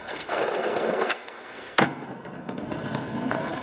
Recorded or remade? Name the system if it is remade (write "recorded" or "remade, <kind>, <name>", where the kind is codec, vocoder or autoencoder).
remade, codec, SNAC